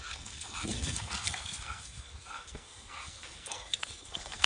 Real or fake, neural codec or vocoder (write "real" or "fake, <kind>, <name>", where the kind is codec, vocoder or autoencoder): fake, codec, SNAC